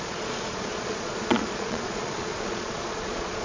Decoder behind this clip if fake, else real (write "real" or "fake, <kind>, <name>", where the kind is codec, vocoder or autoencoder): fake, vocoder, Vocos